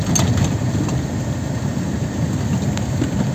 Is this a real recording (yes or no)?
yes